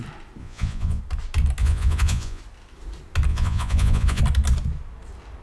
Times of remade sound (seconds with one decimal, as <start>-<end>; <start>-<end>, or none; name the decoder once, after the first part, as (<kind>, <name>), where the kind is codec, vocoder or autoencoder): 0.4-1.0 (vocoder, Vocos); 1.6-2.4; 3.3-4.2